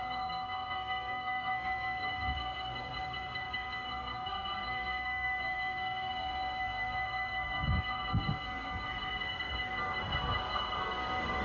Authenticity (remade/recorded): remade